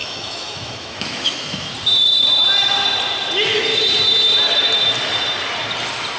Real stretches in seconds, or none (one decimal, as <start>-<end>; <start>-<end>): 1.7-6.2